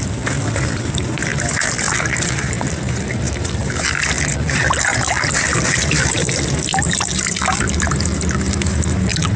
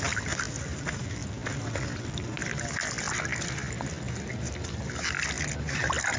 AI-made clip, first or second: first